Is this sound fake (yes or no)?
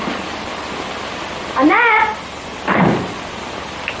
no